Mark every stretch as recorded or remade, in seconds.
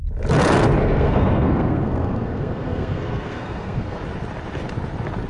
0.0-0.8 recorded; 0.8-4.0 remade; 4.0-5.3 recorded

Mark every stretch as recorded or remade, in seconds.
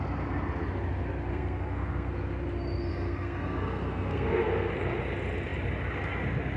0.0-1.3 recorded; 1.3-2.1 remade; 2.1-2.9 recorded; 2.9-4.7 remade; 4.7-6.6 recorded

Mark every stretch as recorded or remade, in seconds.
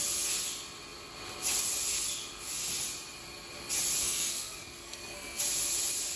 0.0-4.0 recorded; 4.0-5.4 remade; 5.4-6.2 recorded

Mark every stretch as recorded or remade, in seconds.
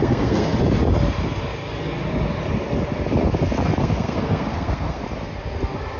0.0-0.5 remade; 0.5-3.8 recorded; 3.8-5.0 remade; 5.0-6.0 recorded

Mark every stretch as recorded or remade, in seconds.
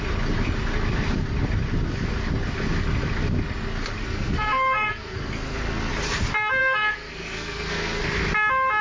0.0-4.0 recorded; 4.0-5.9 remade; 5.9-6.6 recorded; 6.6-8.0 remade; 8.0-8.8 recorded